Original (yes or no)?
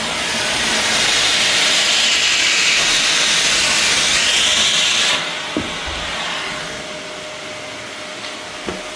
yes